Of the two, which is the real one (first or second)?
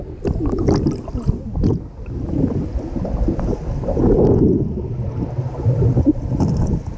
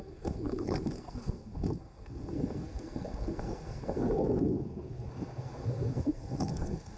first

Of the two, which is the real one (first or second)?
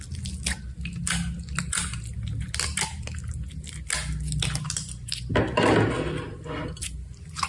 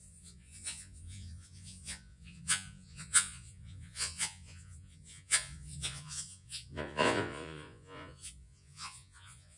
first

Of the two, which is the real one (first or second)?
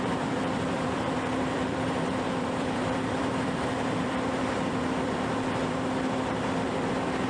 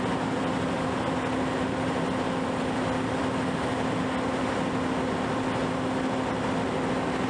second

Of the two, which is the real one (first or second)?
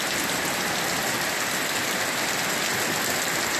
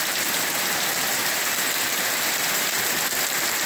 first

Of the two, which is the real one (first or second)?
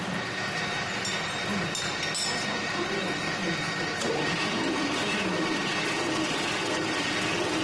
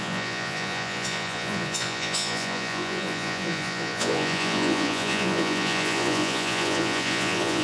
first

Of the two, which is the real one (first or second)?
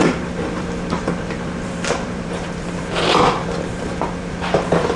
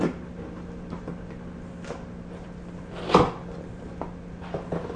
second